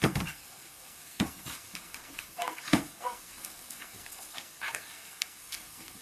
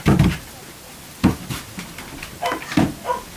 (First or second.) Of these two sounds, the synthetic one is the first